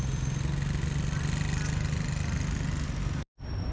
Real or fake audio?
real